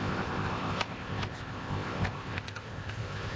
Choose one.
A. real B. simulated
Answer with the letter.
B